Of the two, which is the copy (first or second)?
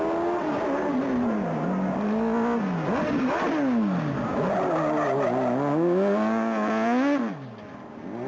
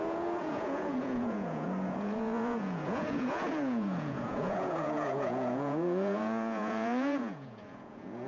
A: second